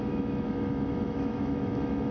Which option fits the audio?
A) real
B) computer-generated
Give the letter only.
B